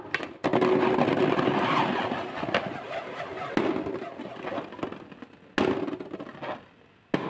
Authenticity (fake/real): real